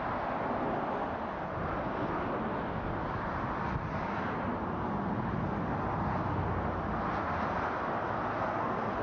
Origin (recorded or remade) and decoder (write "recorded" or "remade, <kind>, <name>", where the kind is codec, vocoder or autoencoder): recorded